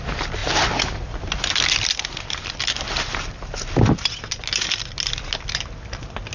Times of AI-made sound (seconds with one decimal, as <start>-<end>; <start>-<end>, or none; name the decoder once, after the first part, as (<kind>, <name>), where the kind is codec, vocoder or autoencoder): none